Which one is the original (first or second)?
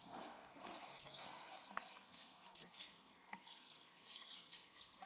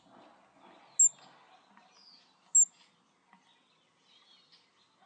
second